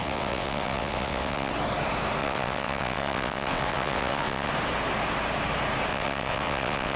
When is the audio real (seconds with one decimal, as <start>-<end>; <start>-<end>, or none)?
1.5-2.2; 4.5-5.9